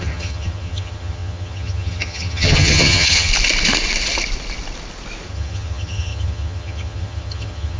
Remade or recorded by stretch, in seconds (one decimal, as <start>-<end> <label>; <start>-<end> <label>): 0.0-3.3 remade; 3.3-5.3 recorded; 5.3-7.8 remade